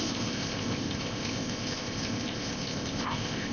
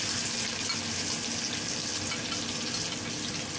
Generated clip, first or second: first